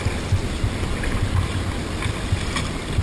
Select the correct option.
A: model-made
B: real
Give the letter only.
B